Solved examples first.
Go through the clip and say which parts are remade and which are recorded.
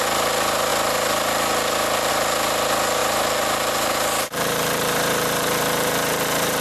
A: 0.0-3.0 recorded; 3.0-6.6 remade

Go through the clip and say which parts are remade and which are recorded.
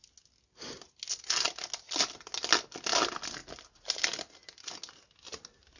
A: 0.0-5.8 recorded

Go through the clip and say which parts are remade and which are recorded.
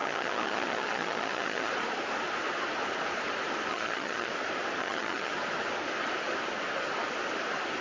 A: 0.0-1.7 remade; 1.7-3.7 recorded; 3.7-4.3 remade; 4.3-4.8 recorded; 4.8-5.3 remade; 5.3-7.8 recorded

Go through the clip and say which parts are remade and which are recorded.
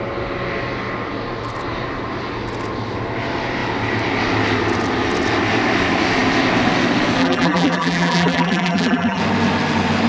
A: 0.0-7.2 recorded; 7.2-9.2 remade; 9.2-10.1 recorded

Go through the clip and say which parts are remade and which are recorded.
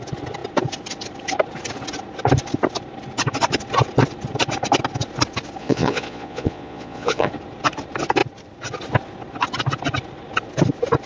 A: 0.0-5.6 recorded; 5.6-7.3 remade; 7.3-11.1 recorded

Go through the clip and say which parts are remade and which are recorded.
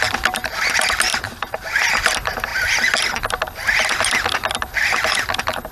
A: 0.0-1.1 recorded; 1.1-1.7 remade; 1.7-5.7 recorded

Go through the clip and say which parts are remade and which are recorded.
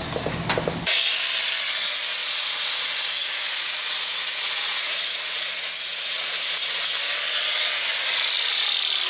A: 0.0-2.2 recorded; 2.2-6.9 remade; 6.9-9.1 recorded